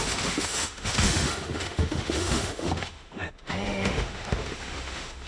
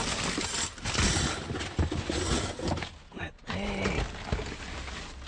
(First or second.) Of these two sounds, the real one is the second